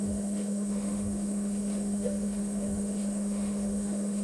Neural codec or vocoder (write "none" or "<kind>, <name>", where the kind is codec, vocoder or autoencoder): autoencoder, DAC-VAE